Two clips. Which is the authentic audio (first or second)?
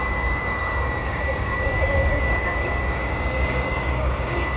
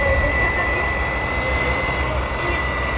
second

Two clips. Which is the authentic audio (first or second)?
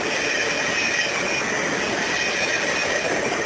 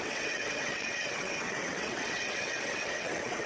first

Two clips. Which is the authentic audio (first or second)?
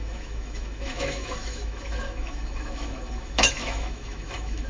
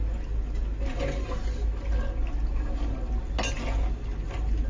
second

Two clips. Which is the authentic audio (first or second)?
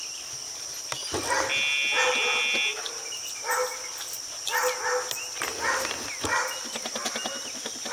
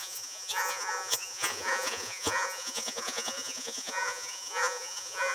first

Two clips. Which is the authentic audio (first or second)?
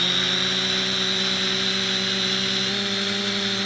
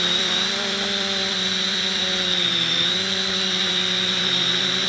first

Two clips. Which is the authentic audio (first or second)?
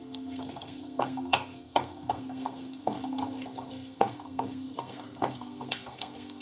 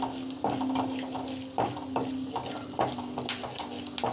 second